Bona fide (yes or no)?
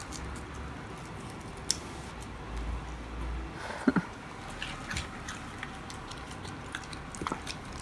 yes